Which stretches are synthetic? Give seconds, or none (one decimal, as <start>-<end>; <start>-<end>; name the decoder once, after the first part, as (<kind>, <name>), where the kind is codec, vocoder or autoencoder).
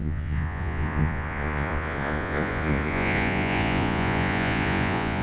0.0-5.2 (vocoder, Vocos)